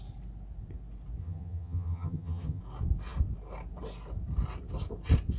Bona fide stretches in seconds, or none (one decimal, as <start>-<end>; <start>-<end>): 0.0-1.2; 2.6-5.4